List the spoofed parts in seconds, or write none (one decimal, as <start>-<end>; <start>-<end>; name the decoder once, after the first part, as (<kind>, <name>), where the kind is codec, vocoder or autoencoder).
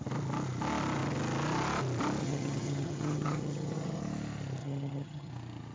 2.2-4.0 (vocoder, HiFi-GAN); 4.6-5.3